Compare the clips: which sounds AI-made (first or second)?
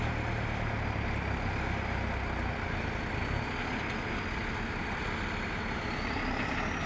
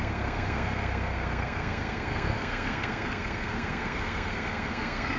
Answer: second